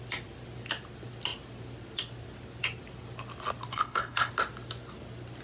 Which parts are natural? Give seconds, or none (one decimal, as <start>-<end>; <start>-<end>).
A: 0.0-3.7; 4.3-5.4